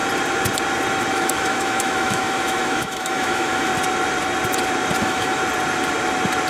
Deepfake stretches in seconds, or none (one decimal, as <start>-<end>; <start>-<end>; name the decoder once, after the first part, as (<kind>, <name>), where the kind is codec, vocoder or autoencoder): 1.1-3.7 (autoencoder, DAC-VAE); 5.0-5.4